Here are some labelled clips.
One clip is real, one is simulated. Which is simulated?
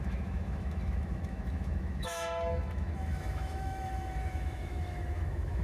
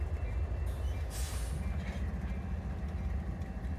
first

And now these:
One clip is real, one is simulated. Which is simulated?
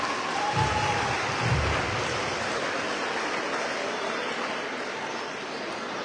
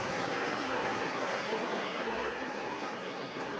second